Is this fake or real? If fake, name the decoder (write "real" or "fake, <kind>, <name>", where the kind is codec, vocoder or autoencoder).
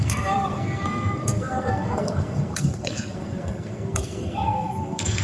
fake, codec, SNAC